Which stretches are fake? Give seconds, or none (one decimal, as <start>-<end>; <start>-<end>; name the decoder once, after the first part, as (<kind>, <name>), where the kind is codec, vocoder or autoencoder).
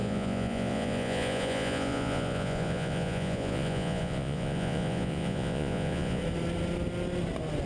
0.0-6.2 (vocoder, Vocos)